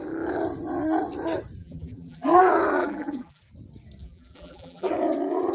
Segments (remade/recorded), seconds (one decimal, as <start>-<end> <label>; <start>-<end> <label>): 0.0-1.6 recorded; 1.6-2.4 remade; 2.4-2.8 recorded; 2.8-3.4 remade; 3.4-4.0 recorded; 4.0-4.9 remade; 4.9-5.5 recorded

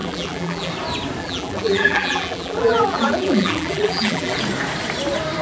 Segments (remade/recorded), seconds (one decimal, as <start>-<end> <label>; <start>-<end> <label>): 0.0-0.7 remade; 0.7-1.2 recorded; 1.2-4.4 remade; 4.4-5.4 recorded